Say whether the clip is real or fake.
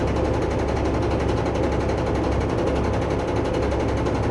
real